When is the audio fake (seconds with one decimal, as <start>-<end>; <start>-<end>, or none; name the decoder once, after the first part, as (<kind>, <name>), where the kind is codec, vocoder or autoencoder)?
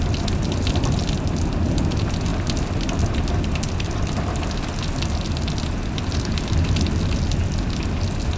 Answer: none